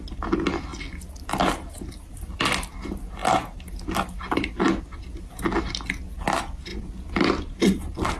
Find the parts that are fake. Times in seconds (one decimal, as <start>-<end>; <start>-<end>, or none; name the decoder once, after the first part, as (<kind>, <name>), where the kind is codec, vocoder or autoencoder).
none